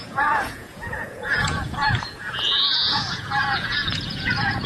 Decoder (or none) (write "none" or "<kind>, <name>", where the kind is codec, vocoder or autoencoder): vocoder, Vocos